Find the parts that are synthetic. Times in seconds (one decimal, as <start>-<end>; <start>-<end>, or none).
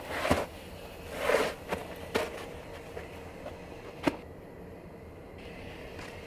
none